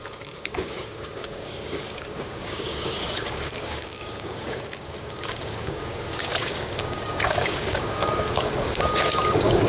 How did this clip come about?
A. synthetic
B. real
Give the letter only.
A